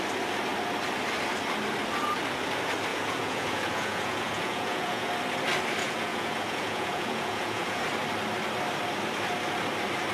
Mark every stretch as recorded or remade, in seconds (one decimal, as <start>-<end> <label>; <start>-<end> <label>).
0.0-2.9 recorded; 2.9-5.1 remade; 5.1-5.8 recorded; 5.8-7.8 remade; 7.8-10.1 recorded